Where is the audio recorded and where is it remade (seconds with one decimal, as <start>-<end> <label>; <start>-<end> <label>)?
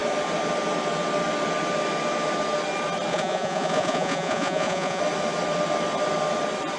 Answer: 0.0-3.1 recorded; 3.1-5.0 remade; 5.0-6.8 recorded